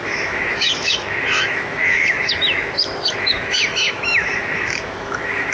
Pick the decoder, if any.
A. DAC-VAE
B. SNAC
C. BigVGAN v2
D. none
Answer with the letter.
A